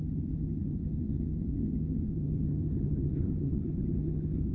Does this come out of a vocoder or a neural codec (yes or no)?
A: yes